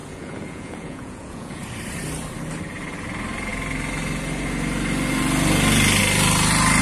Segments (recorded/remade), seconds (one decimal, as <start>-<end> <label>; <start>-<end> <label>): 0.0-1.6 remade; 1.6-6.8 recorded